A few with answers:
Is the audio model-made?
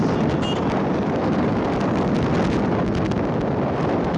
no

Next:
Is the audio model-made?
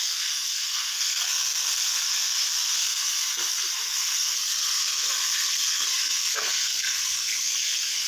yes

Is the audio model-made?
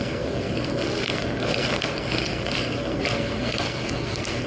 yes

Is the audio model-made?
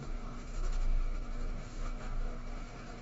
yes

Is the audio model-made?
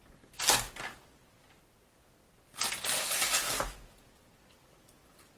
no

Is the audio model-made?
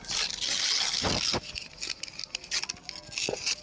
no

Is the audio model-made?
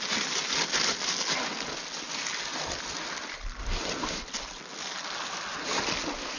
no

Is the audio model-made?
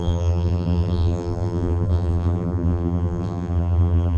yes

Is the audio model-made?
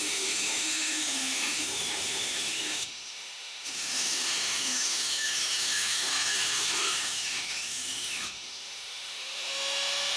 yes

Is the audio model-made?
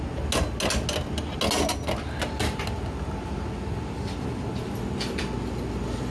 no